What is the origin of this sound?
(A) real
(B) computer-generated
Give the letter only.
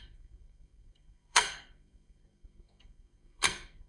B